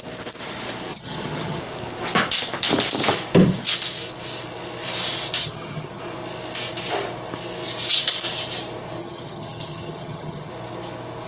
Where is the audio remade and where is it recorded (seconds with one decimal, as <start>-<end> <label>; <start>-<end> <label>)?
0.0-0.9 recorded; 0.9-1.6 remade; 1.6-5.4 recorded; 5.4-6.0 remade; 6.0-9.0 recorded; 9.0-10.5 remade; 10.5-11.3 recorded